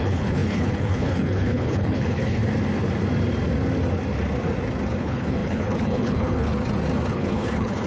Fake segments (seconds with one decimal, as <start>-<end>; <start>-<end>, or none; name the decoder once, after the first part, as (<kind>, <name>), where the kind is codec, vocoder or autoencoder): 0.0-2.4 (codec, HILCodec); 5.0-6.5; 7.1-7.9